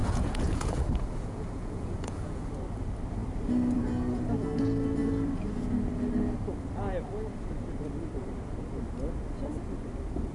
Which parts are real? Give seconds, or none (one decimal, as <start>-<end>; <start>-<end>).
2.5-10.3